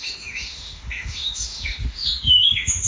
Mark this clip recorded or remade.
remade